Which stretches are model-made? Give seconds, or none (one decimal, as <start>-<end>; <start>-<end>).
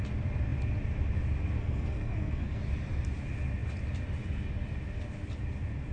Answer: 1.6-2.6